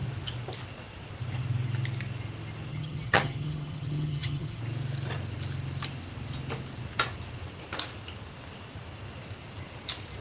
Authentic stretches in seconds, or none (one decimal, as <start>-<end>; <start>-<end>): 0.0-2.7; 4.6-10.2